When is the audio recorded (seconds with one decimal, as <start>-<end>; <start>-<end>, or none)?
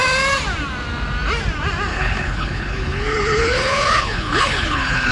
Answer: 0.0-1.9